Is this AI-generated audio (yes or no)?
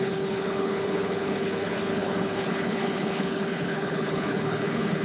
yes